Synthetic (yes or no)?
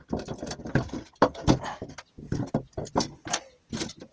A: no